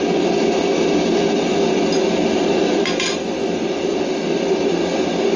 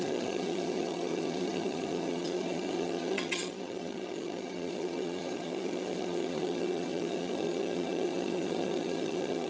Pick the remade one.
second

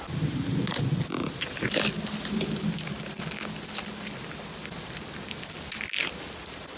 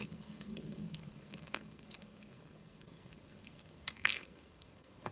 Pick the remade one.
second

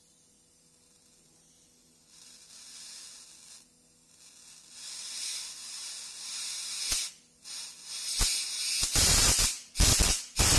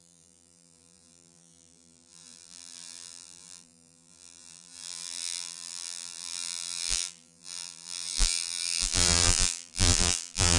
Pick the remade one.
second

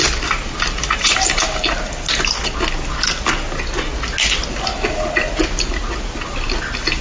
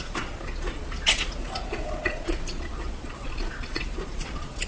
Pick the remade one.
second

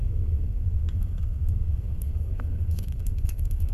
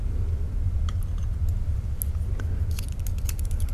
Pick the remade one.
first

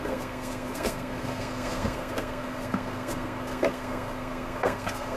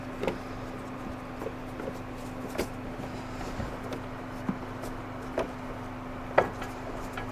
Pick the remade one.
first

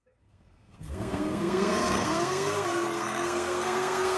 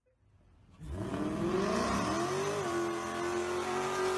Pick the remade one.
first